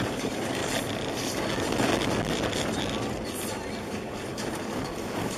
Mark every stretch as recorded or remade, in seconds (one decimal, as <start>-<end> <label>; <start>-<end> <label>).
0.0-0.6 remade; 0.6-3.8 recorded; 3.8-5.4 remade